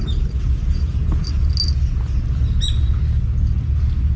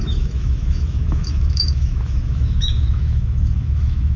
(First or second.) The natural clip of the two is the first